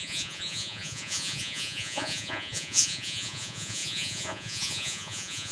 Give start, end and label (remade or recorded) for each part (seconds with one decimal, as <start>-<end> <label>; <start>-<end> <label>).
0.0-5.5 remade